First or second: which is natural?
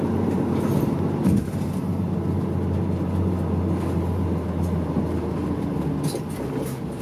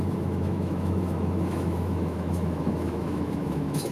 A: first